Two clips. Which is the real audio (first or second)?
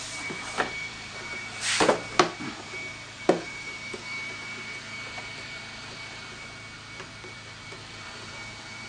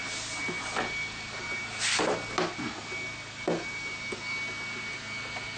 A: second